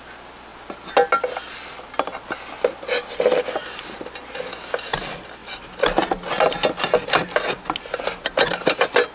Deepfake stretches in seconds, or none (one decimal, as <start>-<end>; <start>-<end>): none